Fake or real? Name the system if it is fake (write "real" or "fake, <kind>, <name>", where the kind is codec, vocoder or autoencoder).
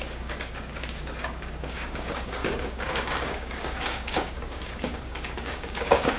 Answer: fake, codec, DAC